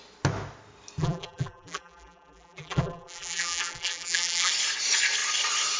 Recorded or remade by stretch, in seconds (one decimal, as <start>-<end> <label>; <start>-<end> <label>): 0.0-1.0 recorded; 1.0-4.5 remade; 4.5-5.8 recorded